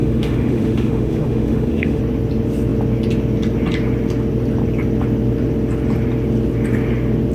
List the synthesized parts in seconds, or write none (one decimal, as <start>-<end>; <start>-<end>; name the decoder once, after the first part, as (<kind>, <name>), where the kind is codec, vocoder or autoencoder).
0.0-2.0 (autoencoder, DAC-VAE)